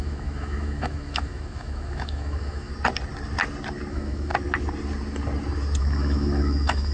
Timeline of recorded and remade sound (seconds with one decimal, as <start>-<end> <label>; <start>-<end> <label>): 0.0-2.7 remade; 2.7-3.9 recorded; 3.9-4.3 remade; 4.3-5.8 recorded; 5.8-6.9 remade